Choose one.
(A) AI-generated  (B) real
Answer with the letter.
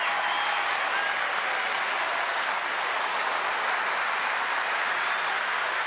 B